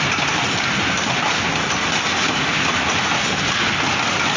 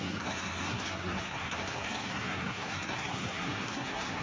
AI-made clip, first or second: second